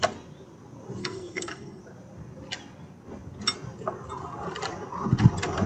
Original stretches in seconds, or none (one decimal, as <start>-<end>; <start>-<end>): 0.0-1.0; 1.8-5.7

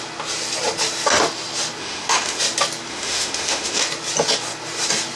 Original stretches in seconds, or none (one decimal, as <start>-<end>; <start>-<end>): 0.0-1.8; 2.4-2.9; 3.8-5.2

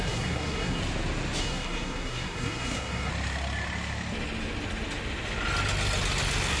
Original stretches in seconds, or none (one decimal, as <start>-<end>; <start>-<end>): 0.8-1.4; 3.1-6.6

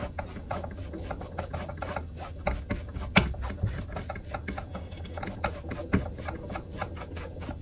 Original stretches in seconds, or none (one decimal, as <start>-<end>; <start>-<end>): 0.0-4.7; 5.2-7.6